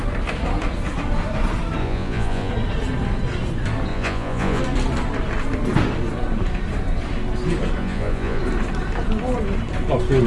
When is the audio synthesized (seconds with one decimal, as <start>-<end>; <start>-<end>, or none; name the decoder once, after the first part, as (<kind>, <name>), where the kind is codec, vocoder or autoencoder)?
1.8-2.5 (vocoder, Vocos); 3.9-4.6; 7.8-8.4